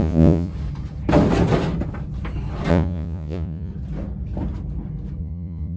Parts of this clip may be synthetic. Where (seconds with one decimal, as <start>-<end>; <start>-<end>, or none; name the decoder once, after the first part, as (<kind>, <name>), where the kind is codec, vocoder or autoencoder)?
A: 0.0-0.5 (vocoder, Vocos); 2.7-3.7; 5.2-5.8